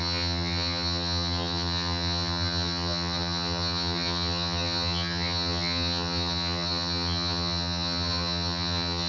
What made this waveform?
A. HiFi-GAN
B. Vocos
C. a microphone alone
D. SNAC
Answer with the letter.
A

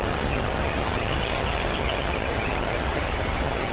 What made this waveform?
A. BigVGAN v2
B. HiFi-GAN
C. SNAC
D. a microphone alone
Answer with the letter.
B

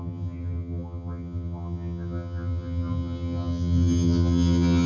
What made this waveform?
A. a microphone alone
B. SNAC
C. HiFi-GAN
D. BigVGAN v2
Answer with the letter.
C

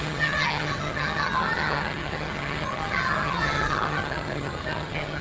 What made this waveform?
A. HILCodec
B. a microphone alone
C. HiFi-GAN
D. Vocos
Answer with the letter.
C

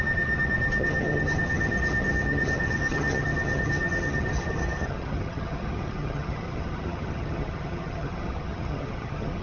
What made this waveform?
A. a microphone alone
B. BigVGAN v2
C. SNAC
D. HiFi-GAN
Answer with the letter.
D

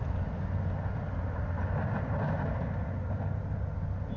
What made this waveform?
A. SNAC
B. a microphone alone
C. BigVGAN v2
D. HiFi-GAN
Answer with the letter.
B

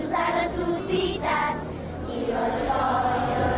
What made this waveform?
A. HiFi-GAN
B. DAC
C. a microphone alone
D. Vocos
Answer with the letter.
C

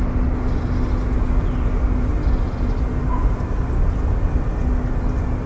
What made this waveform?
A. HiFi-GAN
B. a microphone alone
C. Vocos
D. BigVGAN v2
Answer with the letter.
B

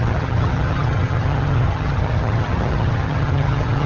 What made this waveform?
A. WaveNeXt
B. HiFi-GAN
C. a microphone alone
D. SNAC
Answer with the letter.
B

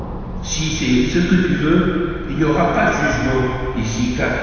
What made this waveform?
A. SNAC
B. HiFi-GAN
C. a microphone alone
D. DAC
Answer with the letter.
C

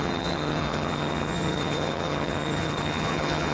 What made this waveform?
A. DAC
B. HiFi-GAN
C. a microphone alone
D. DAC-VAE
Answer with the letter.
B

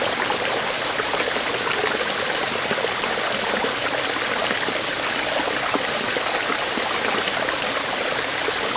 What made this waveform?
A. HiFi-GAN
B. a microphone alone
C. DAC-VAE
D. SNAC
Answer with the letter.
B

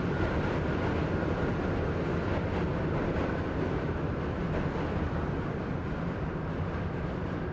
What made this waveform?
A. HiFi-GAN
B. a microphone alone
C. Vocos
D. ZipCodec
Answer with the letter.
B